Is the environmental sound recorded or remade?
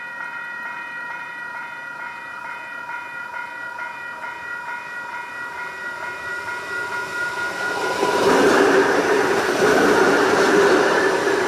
remade